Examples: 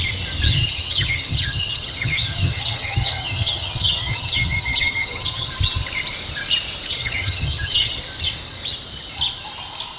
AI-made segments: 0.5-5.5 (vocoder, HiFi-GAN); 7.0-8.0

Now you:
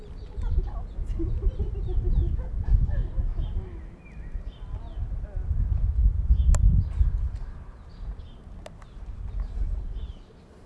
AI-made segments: none